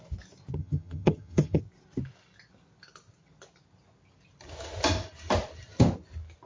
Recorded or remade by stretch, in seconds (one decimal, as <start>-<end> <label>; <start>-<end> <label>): 0.0-0.6 recorded; 0.6-1.6 remade; 1.6-6.5 recorded